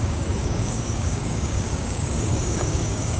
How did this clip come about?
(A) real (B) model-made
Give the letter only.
B